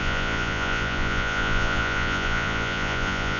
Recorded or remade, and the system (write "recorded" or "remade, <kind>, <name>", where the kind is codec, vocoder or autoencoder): remade, vocoder, Vocos